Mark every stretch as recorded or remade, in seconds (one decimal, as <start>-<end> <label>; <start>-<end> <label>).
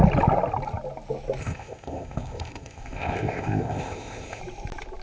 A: 0.0-1.4 recorded; 1.4-4.4 remade; 4.4-5.0 recorded